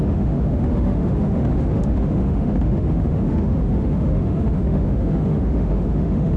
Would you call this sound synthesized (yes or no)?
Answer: yes